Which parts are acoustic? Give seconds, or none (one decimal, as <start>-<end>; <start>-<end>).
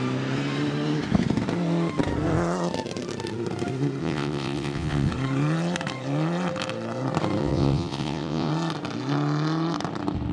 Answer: 0.0-4.0; 5.1-7.4; 8.5-10.3